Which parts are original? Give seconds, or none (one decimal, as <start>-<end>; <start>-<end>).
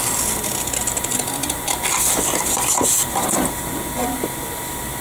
0.0-5.0